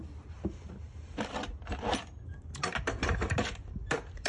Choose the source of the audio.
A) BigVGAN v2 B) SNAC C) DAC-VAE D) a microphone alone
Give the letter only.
D